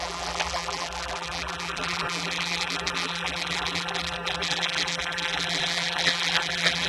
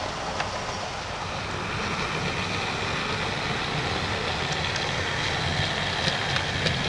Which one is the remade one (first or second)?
first